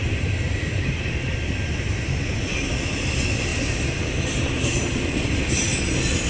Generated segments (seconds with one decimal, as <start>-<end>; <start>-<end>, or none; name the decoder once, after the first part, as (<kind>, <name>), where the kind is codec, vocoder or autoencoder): 3.5-5.2 (vocoder, BigVGAN v2)